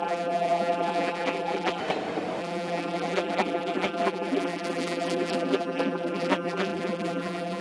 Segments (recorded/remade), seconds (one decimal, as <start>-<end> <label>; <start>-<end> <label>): 0.0-1.8 remade; 1.8-2.4 recorded; 2.4-7.6 remade